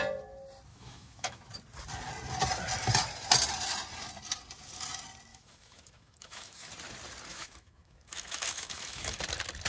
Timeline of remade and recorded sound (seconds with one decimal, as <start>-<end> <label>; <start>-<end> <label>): 0.0-0.7 recorded; 0.7-1.5 remade; 1.5-5.3 recorded; 5.3-6.7 remade; 6.7-7.3 recorded; 7.3-9.2 remade; 9.2-9.7 recorded